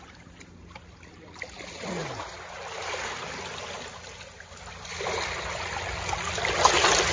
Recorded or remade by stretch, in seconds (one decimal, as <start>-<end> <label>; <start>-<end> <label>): 0.0-7.1 recorded